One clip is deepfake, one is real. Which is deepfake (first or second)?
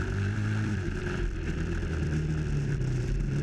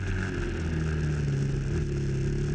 first